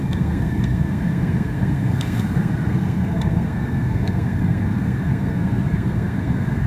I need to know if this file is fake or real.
fake